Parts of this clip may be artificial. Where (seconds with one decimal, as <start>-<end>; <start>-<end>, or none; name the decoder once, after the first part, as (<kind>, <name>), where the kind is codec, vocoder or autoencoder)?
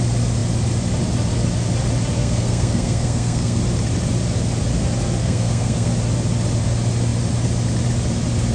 2.2-3.6 (codec, SNAC); 5.2-5.9